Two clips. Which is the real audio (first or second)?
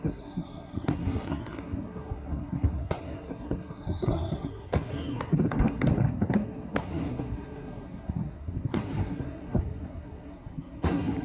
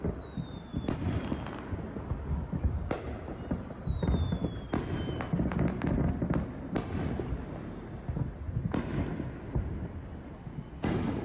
second